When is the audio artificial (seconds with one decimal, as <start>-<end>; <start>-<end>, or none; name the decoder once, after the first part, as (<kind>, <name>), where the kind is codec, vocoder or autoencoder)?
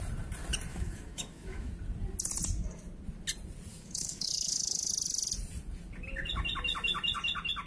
0.7-1.7 (autoencoder, DAC-VAE); 3.7-4.9